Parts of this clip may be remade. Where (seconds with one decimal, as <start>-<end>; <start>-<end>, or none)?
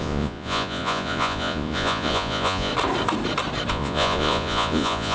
0.0-2.7; 3.7-5.1